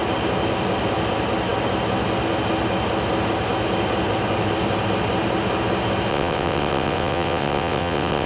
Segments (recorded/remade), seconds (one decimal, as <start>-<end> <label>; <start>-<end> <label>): 0.0-6.1 recorded; 6.1-8.3 remade